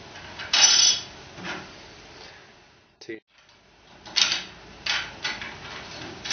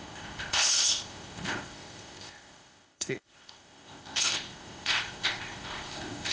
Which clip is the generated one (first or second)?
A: second